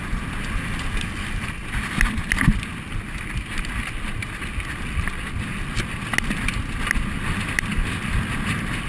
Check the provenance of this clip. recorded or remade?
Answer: recorded